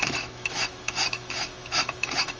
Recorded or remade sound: remade